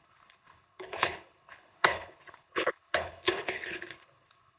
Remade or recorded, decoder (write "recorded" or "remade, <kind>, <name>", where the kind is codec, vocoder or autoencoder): remade, codec, HILCodec